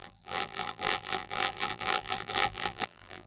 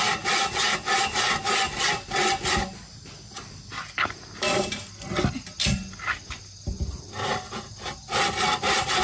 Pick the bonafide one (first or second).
second